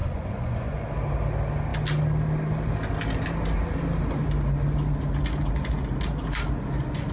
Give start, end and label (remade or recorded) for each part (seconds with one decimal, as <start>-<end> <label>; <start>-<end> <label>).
0.0-0.8 remade; 0.8-7.1 recorded